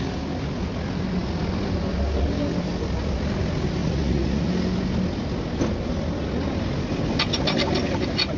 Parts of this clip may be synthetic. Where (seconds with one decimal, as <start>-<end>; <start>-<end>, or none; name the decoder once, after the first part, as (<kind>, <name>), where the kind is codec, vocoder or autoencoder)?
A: 3.8-4.5 (vocoder, Vocos)